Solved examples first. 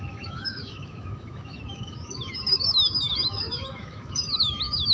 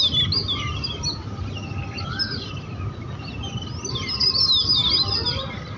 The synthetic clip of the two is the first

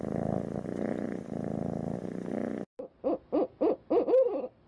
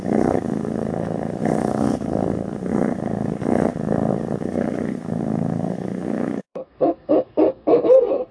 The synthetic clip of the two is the second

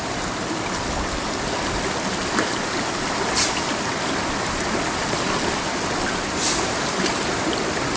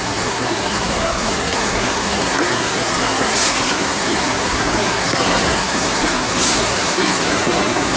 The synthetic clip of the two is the second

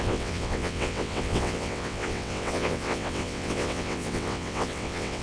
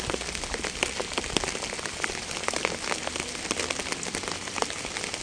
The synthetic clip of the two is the first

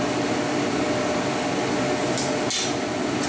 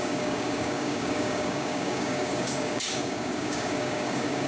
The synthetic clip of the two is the second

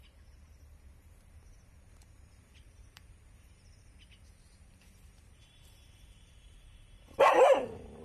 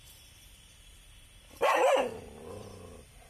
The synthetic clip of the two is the first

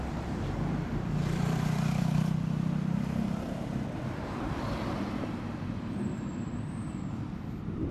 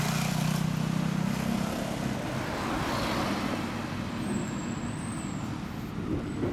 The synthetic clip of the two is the first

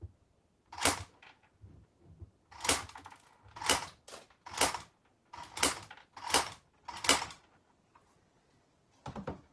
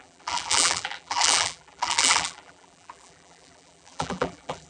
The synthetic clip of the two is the second